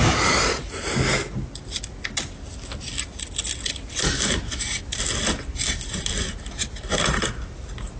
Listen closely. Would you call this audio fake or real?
real